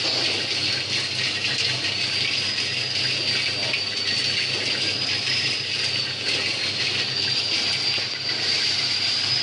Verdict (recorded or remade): recorded